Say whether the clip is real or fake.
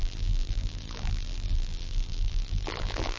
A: fake